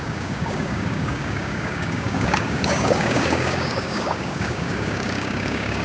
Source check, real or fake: fake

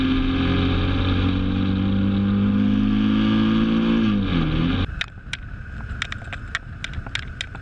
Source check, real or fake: real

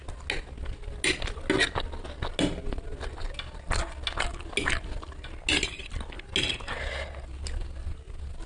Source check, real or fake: real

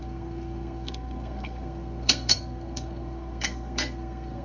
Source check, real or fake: fake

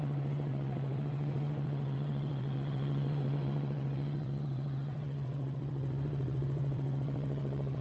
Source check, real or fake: fake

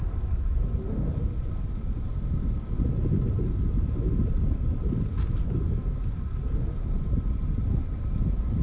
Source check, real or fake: real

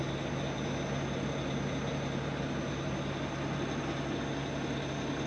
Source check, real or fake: real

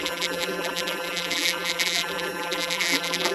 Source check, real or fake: fake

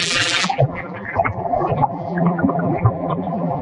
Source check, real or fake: fake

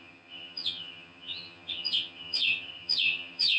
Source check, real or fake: fake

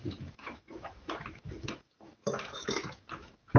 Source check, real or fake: fake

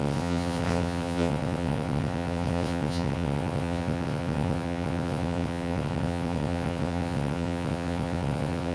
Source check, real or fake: fake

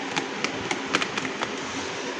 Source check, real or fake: real